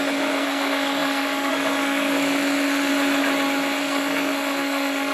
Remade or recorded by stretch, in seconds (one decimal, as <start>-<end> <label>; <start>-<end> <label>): 0.0-2.9 remade; 2.9-3.8 recorded; 3.8-5.1 remade